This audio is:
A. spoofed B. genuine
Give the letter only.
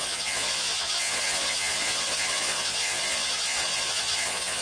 A